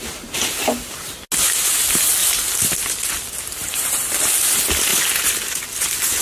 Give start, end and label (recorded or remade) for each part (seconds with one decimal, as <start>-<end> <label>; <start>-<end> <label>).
0.0-2.2 recorded; 2.2-4.5 remade; 4.5-6.2 recorded